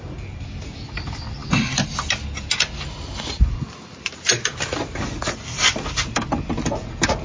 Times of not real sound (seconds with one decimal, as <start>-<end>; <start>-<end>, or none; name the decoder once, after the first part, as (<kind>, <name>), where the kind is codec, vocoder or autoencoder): none